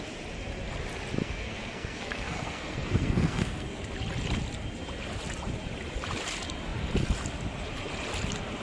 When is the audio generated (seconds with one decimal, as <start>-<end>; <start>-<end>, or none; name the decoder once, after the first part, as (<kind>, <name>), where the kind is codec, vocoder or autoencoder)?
1.2-3.8 (codec, SNAC)